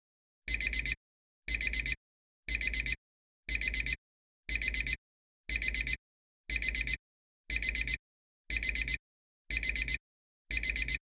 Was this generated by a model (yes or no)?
no